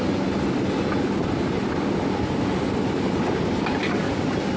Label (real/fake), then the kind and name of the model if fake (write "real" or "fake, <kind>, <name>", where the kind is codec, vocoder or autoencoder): real